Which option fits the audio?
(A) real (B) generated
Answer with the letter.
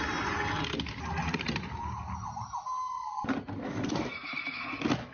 A